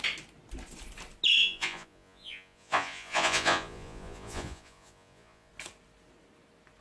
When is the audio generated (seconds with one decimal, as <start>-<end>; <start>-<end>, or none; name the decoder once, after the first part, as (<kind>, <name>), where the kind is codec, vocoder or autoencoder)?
1.4-5.5 (vocoder, Vocos)